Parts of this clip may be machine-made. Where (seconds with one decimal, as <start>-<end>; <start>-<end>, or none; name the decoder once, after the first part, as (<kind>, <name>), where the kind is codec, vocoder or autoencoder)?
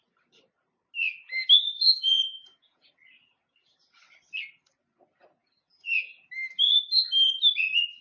1.8-2.9 (vocoder, Vocos); 5.4-6.3